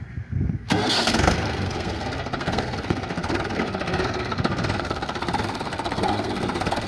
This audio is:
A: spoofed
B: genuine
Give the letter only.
A